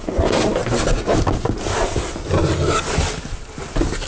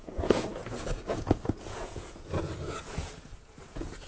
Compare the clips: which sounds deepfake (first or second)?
second